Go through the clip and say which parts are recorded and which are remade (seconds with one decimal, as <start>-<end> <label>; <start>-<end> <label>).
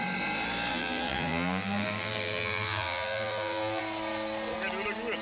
0.0-0.7 recorded; 0.7-3.8 remade; 3.8-5.2 recorded